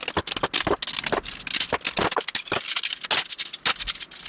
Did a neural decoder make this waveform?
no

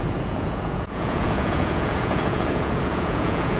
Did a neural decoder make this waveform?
yes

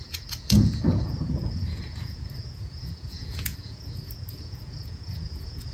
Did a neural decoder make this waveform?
yes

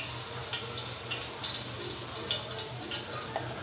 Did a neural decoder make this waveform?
no